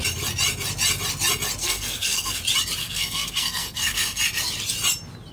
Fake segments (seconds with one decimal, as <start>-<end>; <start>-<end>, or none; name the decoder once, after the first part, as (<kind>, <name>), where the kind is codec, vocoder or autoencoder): 1.6-2.4 (codec, SNAC); 2.8-4.2